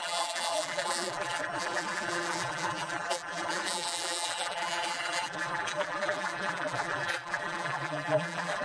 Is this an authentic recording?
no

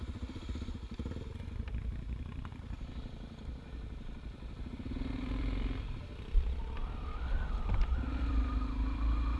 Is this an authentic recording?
no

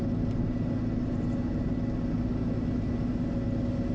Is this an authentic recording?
yes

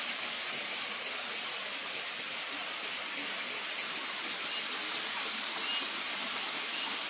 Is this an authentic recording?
yes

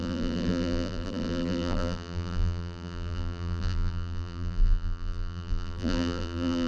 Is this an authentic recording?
no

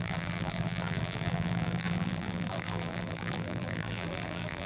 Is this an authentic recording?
no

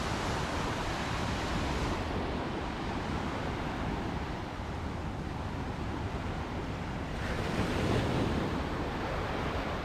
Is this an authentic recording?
no